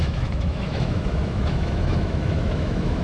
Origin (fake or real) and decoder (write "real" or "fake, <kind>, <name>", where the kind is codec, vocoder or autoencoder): fake, autoencoder, DAC-VAE